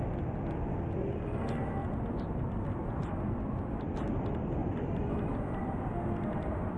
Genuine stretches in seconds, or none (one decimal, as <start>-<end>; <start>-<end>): 0.0-1.8; 2.9-4.6